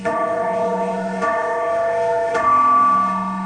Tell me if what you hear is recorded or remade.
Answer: remade